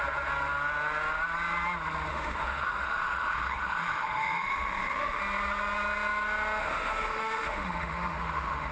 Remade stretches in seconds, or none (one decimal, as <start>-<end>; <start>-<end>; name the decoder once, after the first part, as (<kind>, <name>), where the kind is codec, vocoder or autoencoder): 2.1-5.2 (autoencoder, DAC-VAE); 6.6-8.7